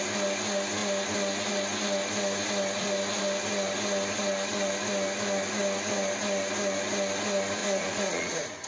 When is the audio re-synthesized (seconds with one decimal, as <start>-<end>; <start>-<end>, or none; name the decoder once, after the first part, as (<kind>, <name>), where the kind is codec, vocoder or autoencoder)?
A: 7.6-8.7 (vocoder, Vocos)